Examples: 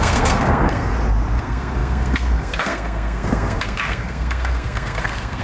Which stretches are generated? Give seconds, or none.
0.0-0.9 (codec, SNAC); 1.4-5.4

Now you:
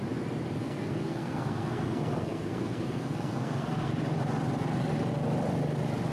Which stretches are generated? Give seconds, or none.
0.6-3.9 (codec, SNAC)

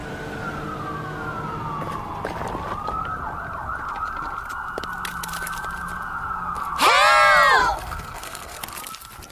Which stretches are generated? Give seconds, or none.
7.6-8.6 (codec, SNAC)

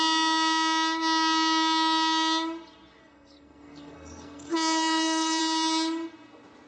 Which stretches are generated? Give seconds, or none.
3.0-5.4 (codec, SNAC)

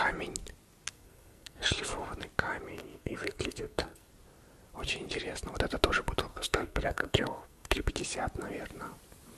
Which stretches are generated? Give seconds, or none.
0.9-2.1 (codec, SNAC); 2.7-4.1; 6.3-7.9

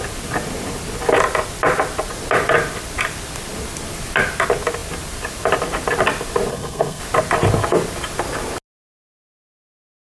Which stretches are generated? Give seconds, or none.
6.5-7.0 (codec, SNAC)

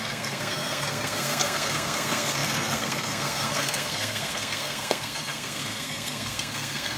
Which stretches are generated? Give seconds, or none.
0.0-7.0 (codec, SNAC)